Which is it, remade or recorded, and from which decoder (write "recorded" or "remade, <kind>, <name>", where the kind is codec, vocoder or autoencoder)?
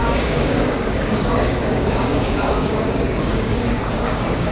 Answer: remade, codec, DAC